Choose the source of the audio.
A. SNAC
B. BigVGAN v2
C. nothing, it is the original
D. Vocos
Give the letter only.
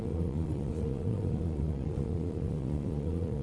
D